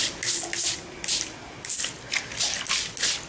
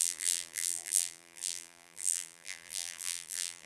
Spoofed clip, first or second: second